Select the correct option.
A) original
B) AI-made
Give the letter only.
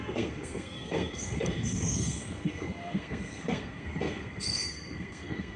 B